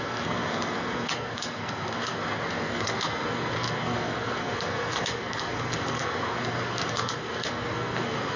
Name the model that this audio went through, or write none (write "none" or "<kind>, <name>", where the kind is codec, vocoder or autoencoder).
codec, SNAC